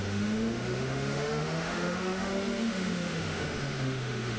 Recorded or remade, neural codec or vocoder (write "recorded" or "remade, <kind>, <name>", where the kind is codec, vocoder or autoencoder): remade, autoencoder, DAC-VAE